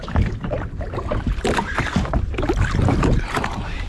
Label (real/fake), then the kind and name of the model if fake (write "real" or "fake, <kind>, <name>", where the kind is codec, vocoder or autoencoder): real